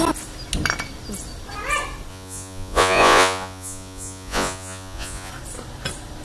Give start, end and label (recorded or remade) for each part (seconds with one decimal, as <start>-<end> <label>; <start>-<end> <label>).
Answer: 0.0-2.1 recorded; 2.1-5.3 remade; 5.3-6.2 recorded